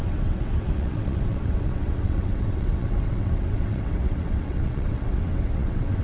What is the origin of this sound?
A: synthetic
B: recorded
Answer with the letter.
A